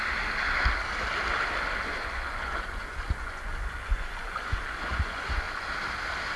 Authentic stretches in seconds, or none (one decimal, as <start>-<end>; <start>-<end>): 0.0-1.9; 5.7-6.4